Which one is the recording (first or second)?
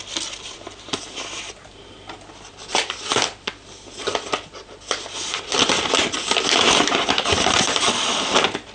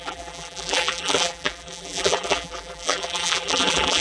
first